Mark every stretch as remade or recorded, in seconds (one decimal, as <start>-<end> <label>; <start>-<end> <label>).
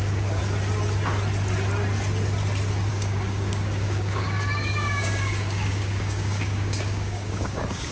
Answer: 0.0-0.4 remade; 0.4-2.9 recorded; 2.9-7.9 remade